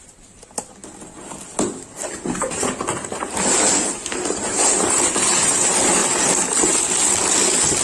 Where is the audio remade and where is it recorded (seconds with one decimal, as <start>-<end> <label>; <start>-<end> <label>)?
0.0-0.8 remade; 0.8-2.2 recorded; 2.2-6.0 remade; 6.0-7.2 recorded; 7.2-7.8 remade